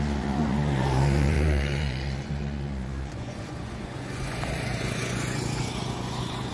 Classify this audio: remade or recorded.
remade